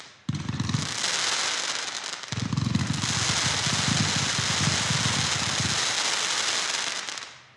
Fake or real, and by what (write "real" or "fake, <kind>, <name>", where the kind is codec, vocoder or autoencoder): real